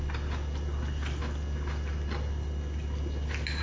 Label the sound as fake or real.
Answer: real